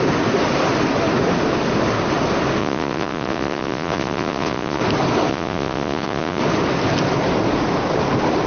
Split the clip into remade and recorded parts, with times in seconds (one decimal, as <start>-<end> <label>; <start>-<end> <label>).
0.0-2.6 recorded; 2.6-4.8 remade; 4.8-5.3 recorded; 5.3-6.4 remade; 6.4-8.5 recorded